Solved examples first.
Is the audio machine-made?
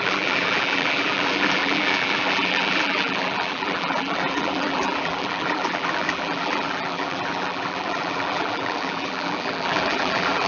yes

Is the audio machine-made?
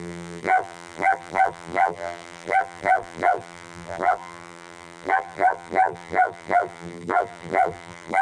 yes